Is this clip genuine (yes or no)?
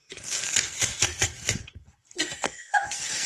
no